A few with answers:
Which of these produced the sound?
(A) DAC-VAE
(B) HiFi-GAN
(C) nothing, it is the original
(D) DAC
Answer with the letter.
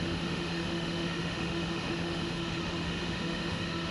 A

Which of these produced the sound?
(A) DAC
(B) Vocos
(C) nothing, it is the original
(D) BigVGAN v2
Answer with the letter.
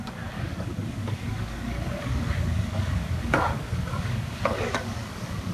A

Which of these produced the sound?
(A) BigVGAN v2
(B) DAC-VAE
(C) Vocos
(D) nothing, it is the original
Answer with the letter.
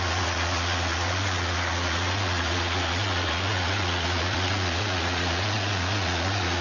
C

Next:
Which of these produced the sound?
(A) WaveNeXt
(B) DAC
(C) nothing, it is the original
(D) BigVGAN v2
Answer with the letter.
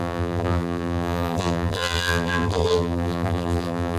D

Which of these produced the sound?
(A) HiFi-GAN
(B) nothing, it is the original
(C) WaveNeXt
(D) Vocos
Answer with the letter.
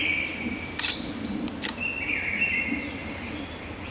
B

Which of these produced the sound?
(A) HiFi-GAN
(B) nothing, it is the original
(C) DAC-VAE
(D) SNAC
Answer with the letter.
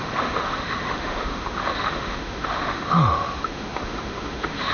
C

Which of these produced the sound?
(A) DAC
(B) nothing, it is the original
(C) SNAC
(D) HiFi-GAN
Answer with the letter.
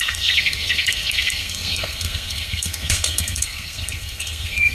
C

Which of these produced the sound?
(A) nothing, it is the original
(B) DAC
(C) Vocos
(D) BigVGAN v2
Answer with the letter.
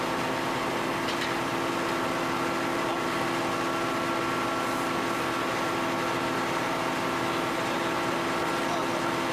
A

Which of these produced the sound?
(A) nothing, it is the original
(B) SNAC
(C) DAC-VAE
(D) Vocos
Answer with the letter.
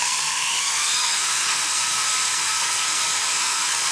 B